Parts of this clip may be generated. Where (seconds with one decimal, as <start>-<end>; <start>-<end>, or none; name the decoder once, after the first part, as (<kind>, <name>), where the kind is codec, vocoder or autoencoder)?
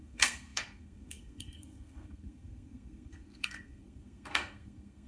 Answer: 0.0-5.1 (codec, SNAC)